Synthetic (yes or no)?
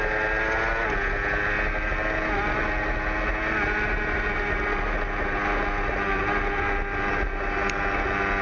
no